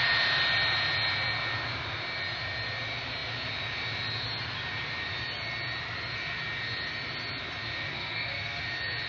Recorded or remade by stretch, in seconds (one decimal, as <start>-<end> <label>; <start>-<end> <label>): 0.0-7.9 recorded; 7.9-8.6 remade; 8.6-9.1 recorded